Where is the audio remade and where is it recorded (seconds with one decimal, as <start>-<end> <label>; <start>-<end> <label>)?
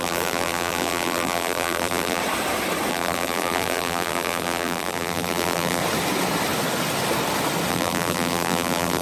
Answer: 0.0-2.2 remade; 2.2-2.9 recorded; 2.9-5.8 remade; 5.8-7.7 recorded; 7.7-9.0 remade